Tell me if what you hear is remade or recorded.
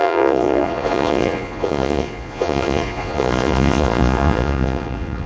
remade